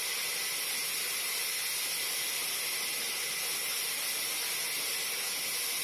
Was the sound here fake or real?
real